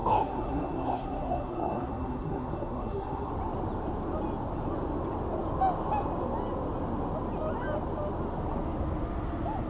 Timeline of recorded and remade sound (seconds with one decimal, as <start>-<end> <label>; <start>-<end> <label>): 0.0-3.3 remade; 3.3-9.7 recorded